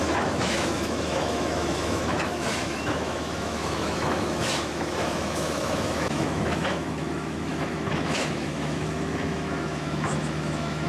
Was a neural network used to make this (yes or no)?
yes